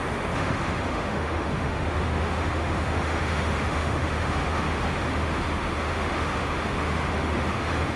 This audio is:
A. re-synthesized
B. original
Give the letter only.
A